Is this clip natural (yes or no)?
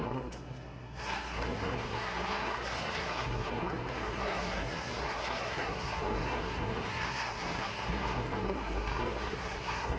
no